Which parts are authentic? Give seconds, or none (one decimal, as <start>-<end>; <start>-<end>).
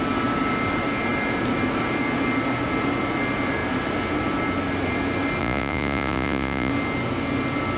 0.0-5.4; 6.7-7.8